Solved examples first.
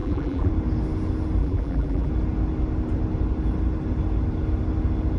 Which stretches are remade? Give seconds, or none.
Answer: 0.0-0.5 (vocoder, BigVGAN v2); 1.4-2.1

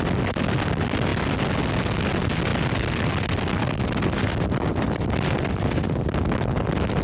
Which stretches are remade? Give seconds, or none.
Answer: 2.5-7.0 (vocoder, BigVGAN v2)

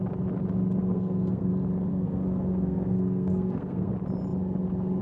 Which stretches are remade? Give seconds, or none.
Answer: 0.8-1.5 (codec, SNAC); 1.9-3.9